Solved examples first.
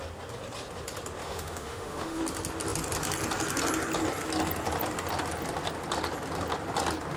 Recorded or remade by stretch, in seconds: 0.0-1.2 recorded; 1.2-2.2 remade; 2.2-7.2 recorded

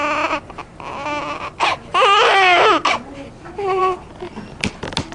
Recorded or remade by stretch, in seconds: 0.0-5.1 recorded

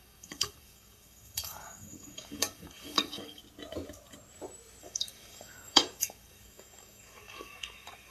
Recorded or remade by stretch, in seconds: 0.0-3.4 remade; 3.4-4.8 recorded; 4.8-8.1 remade

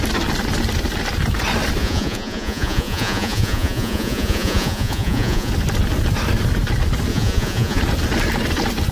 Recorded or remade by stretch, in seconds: 0.0-1.8 recorded; 1.8-5.5 remade; 5.5-7.1 recorded; 7.1-7.8 remade; 7.8-8.9 recorded

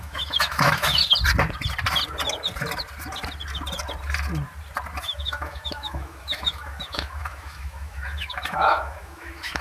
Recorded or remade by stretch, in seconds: 0.0-1.0 remade; 1.0-5.0 recorded; 5.0-9.6 remade

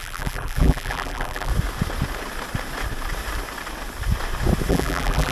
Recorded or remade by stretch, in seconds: 0.0-1.5 remade; 1.5-4.7 recorded; 4.7-5.3 remade